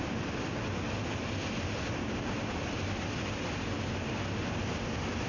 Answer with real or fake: real